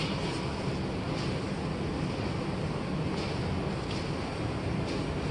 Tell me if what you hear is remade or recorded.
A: recorded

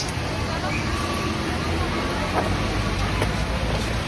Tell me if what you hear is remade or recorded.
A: recorded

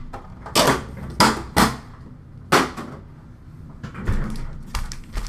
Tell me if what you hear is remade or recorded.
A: recorded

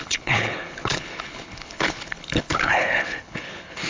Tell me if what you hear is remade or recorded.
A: remade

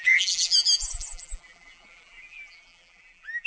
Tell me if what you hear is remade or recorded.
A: remade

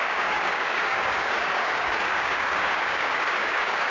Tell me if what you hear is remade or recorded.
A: remade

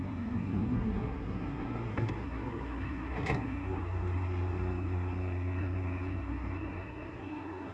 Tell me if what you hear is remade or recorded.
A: remade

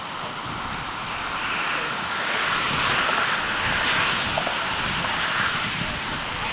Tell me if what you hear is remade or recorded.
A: recorded